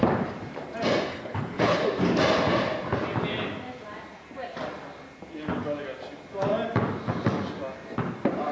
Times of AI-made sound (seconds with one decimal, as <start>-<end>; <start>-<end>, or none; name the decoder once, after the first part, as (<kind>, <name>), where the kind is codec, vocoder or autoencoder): 1.1-1.8 (codec, HILCodec)